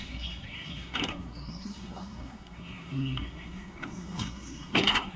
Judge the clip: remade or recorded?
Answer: remade